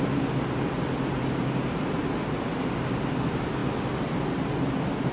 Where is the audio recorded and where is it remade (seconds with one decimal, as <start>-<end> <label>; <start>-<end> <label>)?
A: 0.0-5.1 recorded